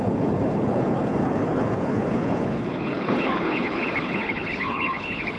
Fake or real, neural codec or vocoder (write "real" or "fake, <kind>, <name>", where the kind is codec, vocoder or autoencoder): fake, codec, HILCodec